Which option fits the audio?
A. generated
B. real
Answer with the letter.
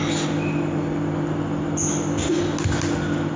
B